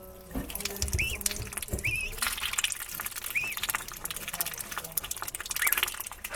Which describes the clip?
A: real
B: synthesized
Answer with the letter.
A